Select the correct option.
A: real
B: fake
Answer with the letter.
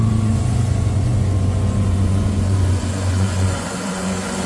B